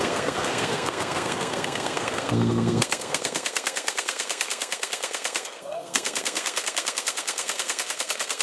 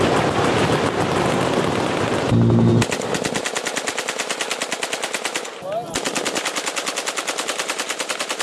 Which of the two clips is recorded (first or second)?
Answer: second